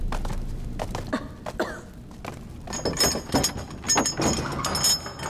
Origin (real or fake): real